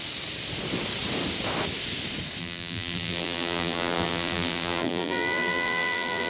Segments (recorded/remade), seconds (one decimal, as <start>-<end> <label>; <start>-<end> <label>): 0.0-2.4 recorded; 2.4-6.3 remade

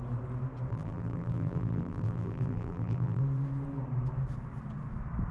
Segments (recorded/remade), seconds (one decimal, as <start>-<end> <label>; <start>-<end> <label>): 0.0-0.7 recorded; 0.7-3.2 remade; 3.2-5.3 recorded